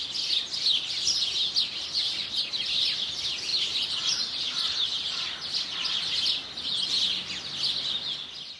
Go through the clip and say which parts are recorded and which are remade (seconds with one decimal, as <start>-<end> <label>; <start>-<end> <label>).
0.0-3.5 recorded; 3.5-5.2 remade; 5.2-8.6 recorded

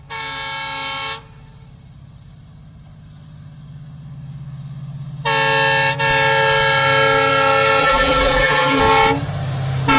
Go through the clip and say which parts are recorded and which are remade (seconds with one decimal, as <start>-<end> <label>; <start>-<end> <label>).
0.0-7.8 recorded; 7.8-8.8 remade; 8.8-10.0 recorded

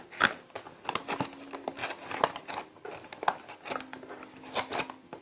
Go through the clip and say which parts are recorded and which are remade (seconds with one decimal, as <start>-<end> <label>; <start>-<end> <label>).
0.0-5.2 recorded

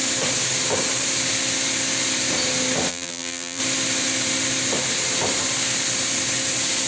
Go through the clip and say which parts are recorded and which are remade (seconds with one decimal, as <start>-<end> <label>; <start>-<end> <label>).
0.0-2.9 recorded; 2.9-3.6 remade; 3.6-6.9 recorded

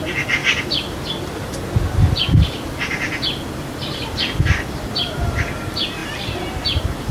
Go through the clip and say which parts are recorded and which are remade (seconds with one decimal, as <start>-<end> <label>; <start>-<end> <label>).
0.0-6.0 recorded; 6.0-6.5 remade; 6.5-7.1 recorded

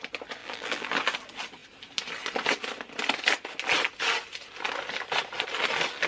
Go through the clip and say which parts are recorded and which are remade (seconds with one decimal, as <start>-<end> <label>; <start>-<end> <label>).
0.0-0.4 recorded; 0.4-0.9 remade; 0.9-6.1 recorded

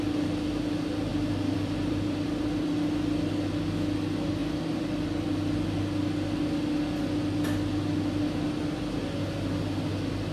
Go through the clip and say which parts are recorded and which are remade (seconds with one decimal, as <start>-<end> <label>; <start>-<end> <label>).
0.0-1.1 recorded; 1.1-2.7 remade; 2.7-10.3 recorded